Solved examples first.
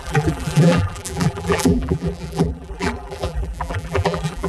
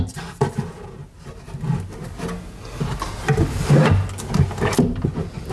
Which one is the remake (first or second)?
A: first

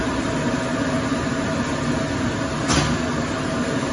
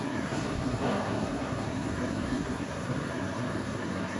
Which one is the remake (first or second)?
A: second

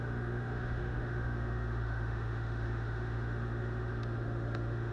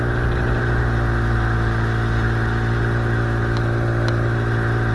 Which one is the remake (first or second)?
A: first